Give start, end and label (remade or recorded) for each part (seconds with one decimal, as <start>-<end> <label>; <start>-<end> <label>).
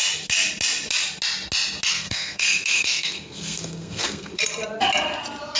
0.0-1.9 recorded; 1.9-4.4 remade; 4.4-5.6 recorded